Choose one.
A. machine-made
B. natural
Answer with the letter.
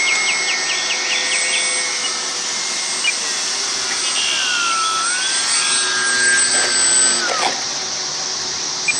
B